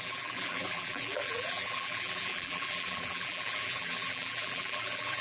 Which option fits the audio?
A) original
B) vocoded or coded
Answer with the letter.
B